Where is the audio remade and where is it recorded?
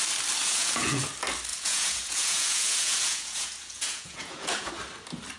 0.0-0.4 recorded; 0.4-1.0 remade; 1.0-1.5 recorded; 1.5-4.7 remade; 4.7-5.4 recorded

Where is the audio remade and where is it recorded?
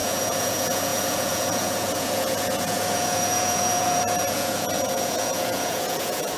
0.0-6.4 remade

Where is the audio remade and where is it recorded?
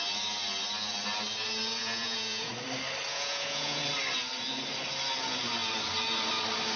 0.0-1.8 recorded; 1.8-2.5 remade; 2.5-3.1 recorded; 3.1-3.8 remade; 3.8-6.8 recorded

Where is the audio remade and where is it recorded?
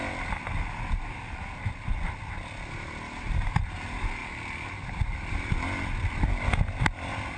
0.0-7.4 recorded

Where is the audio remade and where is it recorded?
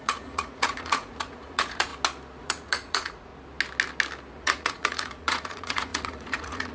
0.0-1.9 remade; 1.9-2.4 recorded; 2.4-3.3 remade; 3.3-4.3 recorded; 4.3-6.7 remade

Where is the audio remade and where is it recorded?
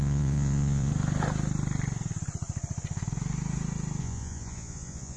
0.0-0.9 remade; 0.9-4.0 recorded; 4.0-5.2 remade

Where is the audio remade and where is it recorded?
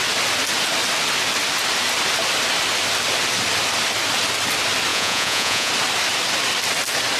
0.0-4.9 recorded; 4.9-5.7 remade; 5.7-7.2 recorded